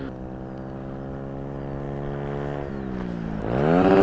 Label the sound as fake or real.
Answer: real